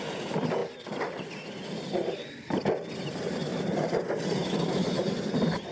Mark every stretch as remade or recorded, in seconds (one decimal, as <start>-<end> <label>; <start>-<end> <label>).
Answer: 0.0-3.5 recorded; 3.5-4.0 remade; 4.0-4.4 recorded; 4.4-5.7 remade